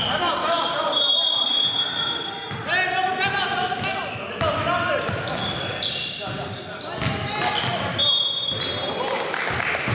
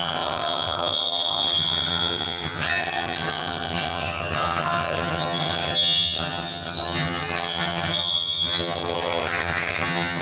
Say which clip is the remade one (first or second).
second